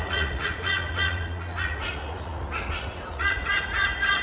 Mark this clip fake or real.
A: fake